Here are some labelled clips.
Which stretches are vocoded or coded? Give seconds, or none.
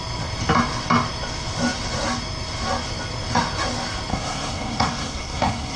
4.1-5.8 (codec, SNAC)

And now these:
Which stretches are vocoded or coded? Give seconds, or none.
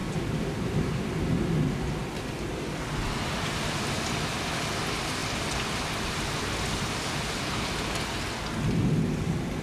0.0-1.2 (vocoder, BigVGAN v2); 2.0-4.4; 5.2-8.0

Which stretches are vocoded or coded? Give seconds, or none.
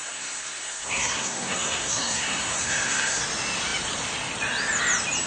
0.0-3.2 (codec, SNAC)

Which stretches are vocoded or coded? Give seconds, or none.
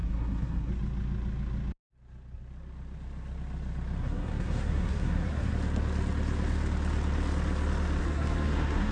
0.0-0.7 (codec, SNAC); 4.0-5.5; 8.0-8.9